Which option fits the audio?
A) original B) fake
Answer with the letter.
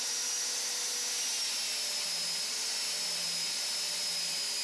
A